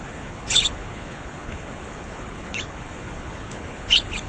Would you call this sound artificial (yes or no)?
yes